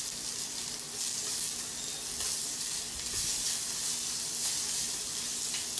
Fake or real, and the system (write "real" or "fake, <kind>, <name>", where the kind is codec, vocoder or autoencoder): real